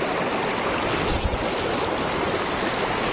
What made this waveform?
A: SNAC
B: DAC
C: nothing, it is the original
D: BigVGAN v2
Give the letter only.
C